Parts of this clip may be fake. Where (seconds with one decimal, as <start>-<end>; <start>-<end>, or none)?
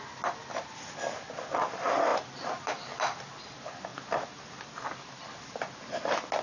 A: none